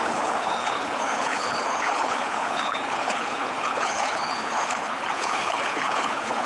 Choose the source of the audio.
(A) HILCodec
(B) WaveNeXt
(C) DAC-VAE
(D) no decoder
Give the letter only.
A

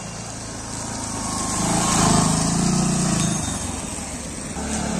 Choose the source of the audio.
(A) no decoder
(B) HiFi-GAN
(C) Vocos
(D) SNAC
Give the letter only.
A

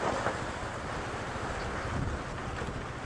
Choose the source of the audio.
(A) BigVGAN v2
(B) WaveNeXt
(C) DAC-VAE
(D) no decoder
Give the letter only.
D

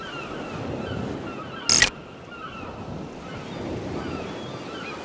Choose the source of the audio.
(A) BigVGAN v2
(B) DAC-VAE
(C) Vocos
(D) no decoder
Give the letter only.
D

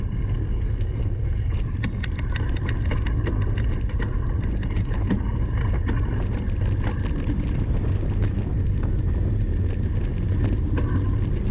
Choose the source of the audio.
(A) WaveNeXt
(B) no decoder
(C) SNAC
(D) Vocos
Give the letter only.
B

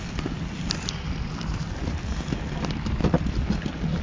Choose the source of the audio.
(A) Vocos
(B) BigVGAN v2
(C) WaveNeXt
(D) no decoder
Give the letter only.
D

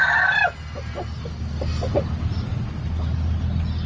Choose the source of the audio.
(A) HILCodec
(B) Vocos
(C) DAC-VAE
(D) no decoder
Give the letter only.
D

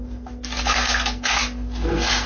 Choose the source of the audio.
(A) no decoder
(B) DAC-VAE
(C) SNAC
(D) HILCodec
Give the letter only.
C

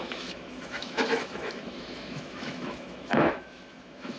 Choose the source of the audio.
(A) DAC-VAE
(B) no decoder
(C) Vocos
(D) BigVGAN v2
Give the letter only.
A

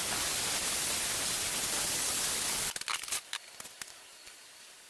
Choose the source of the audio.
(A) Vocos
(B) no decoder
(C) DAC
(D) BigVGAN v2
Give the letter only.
B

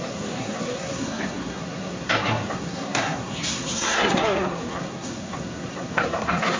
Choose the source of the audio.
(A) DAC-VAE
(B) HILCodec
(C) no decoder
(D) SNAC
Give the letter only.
D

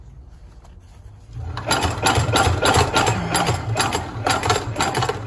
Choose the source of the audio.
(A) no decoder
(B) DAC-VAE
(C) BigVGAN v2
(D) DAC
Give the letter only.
A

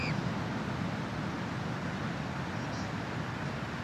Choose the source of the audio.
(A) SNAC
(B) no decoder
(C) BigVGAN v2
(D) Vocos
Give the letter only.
B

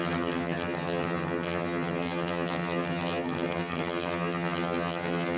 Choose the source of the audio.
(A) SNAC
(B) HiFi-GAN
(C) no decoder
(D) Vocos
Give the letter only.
B